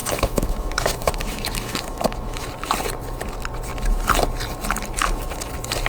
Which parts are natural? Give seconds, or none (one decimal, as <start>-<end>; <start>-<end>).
2.5-5.9